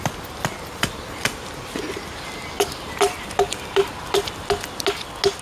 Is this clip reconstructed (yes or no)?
no